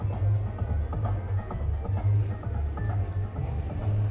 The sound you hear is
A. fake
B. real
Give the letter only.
B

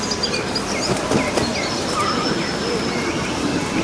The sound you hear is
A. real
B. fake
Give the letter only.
A